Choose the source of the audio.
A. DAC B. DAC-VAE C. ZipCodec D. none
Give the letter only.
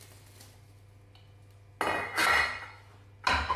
D